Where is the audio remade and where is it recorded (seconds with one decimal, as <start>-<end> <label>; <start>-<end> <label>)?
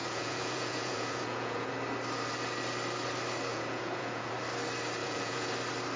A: 0.0-1.7 remade; 1.7-3.5 recorded; 3.5-4.3 remade; 4.3-5.0 recorded; 5.0-5.5 remade; 5.5-6.0 recorded